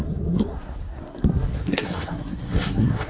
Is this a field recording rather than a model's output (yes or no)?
no